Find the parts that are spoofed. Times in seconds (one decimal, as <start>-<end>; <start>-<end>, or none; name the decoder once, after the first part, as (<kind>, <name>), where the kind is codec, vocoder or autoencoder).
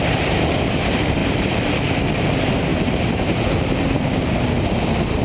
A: 1.2-1.9 (vocoder, BigVGAN v2); 2.7-3.8